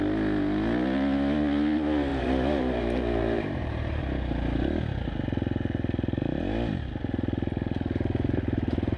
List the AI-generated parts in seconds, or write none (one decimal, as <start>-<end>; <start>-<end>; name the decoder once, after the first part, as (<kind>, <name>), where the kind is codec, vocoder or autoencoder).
2.1-4.0 (vocoder, BigVGAN v2)

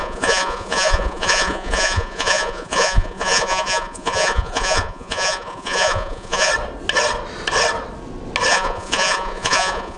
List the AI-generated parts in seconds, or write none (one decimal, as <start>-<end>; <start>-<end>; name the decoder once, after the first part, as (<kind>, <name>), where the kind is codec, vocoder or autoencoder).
0.0-6.5 (vocoder, Vocos); 8.5-10.0